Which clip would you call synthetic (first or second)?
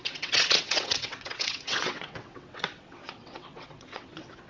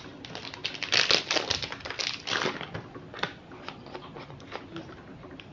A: first